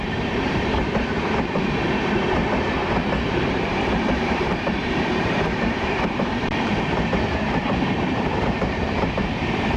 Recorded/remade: remade